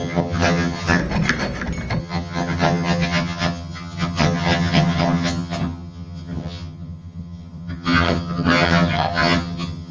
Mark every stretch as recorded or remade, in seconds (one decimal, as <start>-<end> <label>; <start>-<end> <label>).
0.0-1.0 remade; 1.0-2.0 recorded; 2.0-9.9 remade